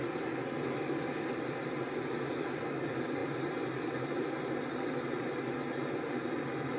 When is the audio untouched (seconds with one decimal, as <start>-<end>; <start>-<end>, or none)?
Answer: 0.0-6.8